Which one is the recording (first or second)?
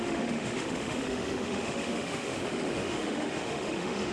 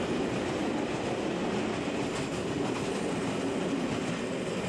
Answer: second